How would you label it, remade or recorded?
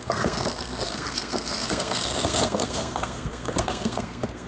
remade